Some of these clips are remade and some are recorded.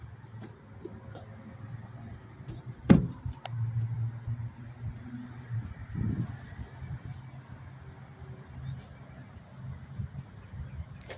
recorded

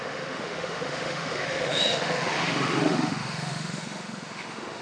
remade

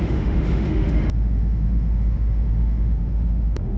remade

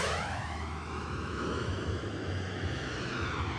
remade